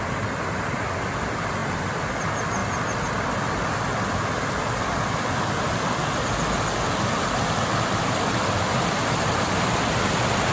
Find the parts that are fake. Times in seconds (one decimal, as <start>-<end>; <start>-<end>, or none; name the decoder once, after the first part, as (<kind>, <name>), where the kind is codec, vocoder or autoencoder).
none